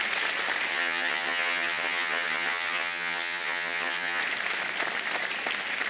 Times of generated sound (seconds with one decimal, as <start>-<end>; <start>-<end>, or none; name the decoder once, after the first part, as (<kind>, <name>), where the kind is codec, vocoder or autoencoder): 0.7-4.2 (vocoder, HiFi-GAN)